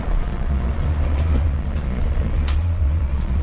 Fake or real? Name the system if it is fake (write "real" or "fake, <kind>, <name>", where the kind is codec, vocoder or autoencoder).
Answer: fake, vocoder, Vocos